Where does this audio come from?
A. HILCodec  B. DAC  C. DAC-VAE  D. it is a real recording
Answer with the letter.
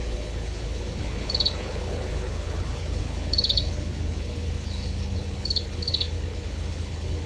A